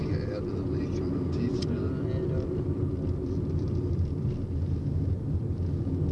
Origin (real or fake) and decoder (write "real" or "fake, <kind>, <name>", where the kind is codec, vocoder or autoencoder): real